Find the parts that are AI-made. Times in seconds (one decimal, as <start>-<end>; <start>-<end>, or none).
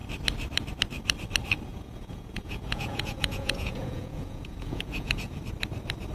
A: 1.7-5.4